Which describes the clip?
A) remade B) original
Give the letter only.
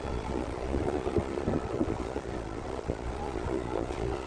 A